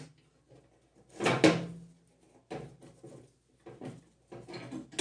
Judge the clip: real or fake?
real